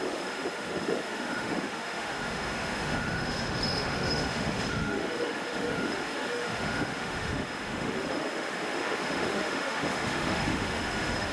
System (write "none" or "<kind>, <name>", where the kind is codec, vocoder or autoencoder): autoencoder, DAC-VAE